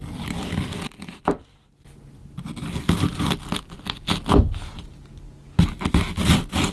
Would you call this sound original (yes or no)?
yes